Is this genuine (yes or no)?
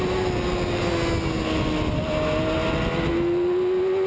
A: yes